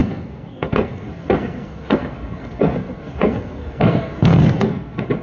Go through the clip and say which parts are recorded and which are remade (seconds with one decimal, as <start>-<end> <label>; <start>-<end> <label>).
0.0-5.2 remade